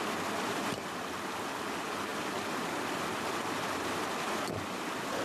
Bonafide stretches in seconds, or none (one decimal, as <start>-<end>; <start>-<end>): 0.0-5.2